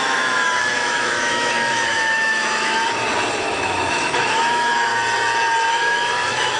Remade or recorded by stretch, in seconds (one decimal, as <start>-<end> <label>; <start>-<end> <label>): 0.0-2.8 remade; 2.8-3.4 recorded; 3.4-4.9 remade; 4.9-5.7 recorded; 5.7-6.6 remade